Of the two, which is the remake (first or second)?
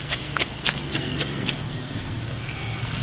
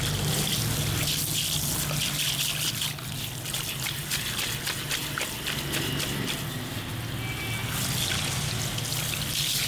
first